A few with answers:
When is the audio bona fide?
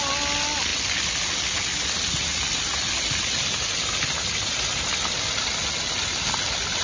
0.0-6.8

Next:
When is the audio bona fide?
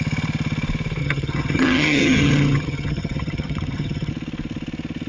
0.0-1.0; 4.1-5.1